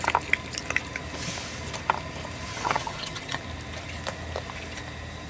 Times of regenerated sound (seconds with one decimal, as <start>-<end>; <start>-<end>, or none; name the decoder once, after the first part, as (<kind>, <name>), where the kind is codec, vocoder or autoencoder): 2.5-3.4 (vocoder, HiFi-GAN)